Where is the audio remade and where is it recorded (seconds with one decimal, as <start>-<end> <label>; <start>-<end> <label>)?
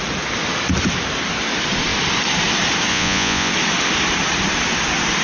0.0-2.9 recorded; 2.9-3.5 remade; 3.5-5.2 recorded